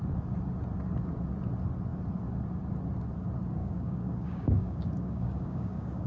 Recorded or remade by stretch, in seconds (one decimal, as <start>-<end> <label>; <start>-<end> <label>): 0.0-3.6 recorded; 3.6-6.1 remade